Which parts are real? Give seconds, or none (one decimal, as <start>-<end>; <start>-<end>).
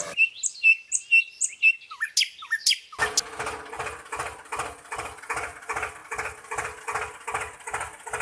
0.0-8.2